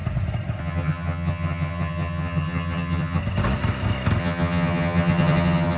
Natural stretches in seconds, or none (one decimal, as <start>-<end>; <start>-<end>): 0.0-0.6; 3.2-4.2